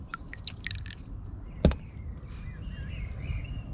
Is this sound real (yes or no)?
yes